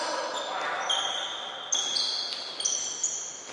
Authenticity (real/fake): real